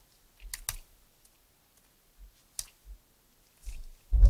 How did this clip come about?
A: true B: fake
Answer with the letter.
A